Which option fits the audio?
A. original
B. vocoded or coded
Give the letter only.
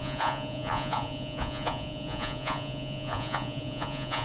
B